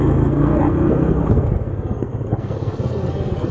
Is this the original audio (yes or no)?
no